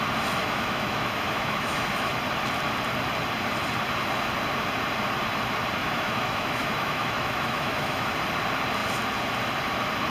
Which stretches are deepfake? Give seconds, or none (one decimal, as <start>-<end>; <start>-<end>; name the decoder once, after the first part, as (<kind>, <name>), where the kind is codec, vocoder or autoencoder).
0.4-2.1 (autoencoder, DAC-VAE); 5.8-8.2